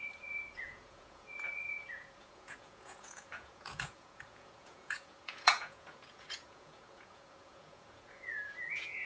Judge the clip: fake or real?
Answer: fake